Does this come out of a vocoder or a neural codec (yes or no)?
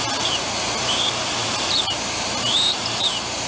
yes